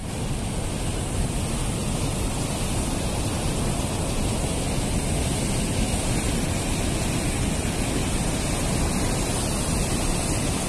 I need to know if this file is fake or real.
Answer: real